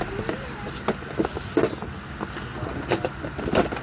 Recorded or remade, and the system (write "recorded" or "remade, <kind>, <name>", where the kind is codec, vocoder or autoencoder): recorded